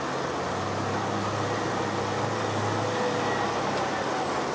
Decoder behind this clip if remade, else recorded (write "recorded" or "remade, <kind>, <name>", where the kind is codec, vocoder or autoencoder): recorded